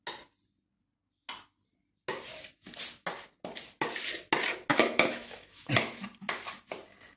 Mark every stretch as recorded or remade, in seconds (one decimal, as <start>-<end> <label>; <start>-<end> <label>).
0.0-4.7 recorded; 4.7-5.7 remade; 5.7-7.2 recorded